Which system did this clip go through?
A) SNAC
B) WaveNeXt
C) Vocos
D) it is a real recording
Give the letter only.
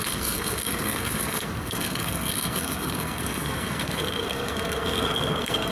A